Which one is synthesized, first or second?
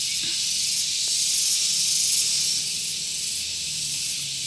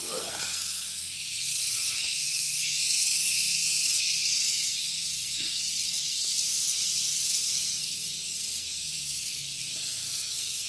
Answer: second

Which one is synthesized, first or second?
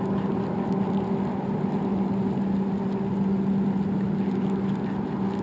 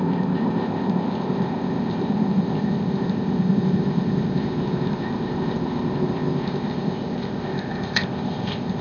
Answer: second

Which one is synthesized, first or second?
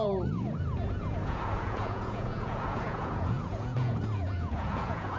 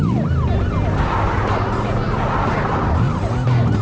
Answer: first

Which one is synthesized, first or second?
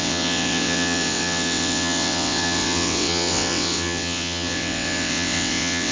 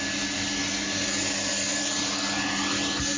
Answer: first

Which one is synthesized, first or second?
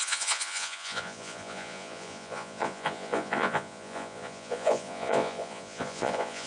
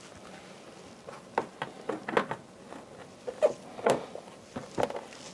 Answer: first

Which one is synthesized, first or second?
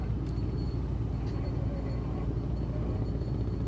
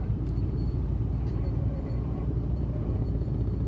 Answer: second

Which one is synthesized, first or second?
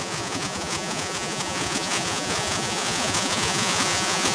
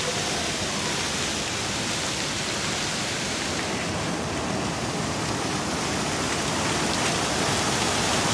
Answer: first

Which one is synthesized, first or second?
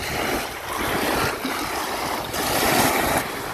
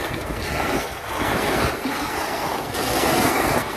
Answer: second